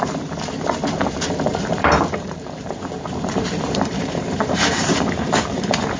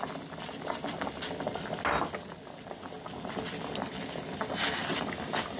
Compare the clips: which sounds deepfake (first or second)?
first